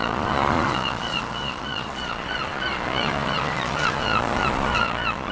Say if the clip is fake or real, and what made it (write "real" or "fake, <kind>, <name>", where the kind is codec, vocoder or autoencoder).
fake, vocoder, Vocos